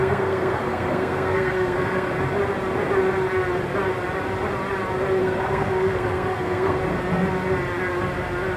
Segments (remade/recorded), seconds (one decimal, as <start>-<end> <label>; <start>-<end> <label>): 0.0-2.1 remade; 2.1-5.2 recorded; 5.2-6.8 remade; 6.8-8.6 recorded

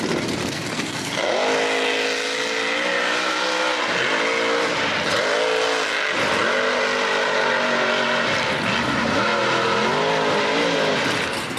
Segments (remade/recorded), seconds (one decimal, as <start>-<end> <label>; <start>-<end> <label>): 0.0-0.4 recorded; 0.4-1.1 remade; 1.1-11.6 recorded

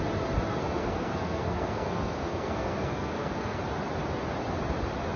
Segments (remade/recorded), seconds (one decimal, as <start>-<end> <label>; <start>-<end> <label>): 0.0-0.5 recorded; 0.5-3.6 remade; 3.6-5.2 recorded

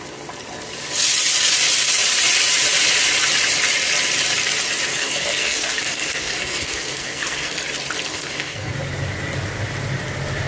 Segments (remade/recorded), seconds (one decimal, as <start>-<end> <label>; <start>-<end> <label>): 0.0-4.9 recorded; 4.9-7.6 remade; 7.6-8.1 recorded; 8.1-8.7 remade; 8.7-10.5 recorded